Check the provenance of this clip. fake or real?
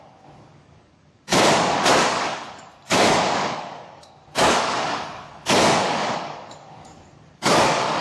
fake